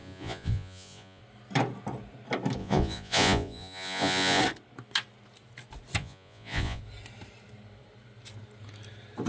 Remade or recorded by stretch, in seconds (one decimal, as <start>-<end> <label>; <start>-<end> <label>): 0.0-1.2 remade; 1.2-2.6 recorded; 2.6-4.4 remade; 4.4-6.0 recorded; 6.0-6.8 remade; 6.8-9.3 recorded